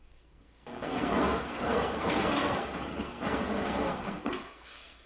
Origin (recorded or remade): remade